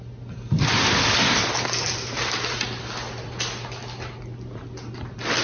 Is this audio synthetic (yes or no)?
no